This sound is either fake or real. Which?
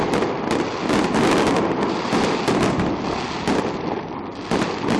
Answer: real